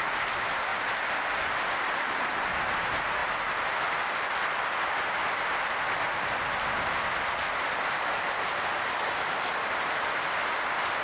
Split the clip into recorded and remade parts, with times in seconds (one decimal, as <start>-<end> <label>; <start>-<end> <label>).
0.0-11.0 recorded